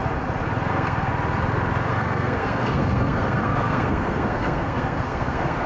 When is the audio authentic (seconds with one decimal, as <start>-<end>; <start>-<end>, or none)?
0.0-0.7; 1.1-1.9